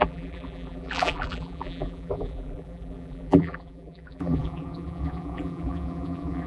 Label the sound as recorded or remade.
remade